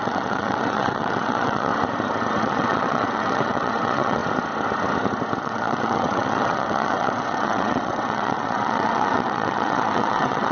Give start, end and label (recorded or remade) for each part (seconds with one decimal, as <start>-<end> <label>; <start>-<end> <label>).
0.0-1.7 remade; 1.7-2.4 recorded; 2.4-4.2 remade; 4.2-5.4 recorded; 5.4-10.5 remade